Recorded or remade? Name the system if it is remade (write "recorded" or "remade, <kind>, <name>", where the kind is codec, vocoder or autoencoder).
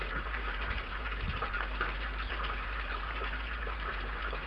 remade, vocoder, BigVGAN v2